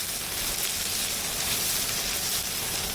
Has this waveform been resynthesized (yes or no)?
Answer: yes